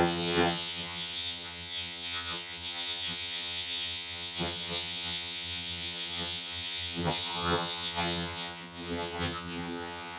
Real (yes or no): no